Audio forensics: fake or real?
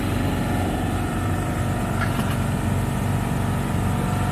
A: real